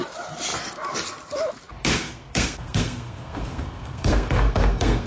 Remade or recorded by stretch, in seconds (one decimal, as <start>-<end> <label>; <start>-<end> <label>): 0.0-1.9 recorded; 1.9-5.1 remade